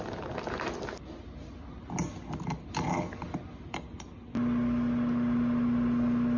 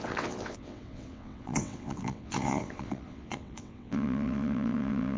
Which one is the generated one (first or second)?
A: second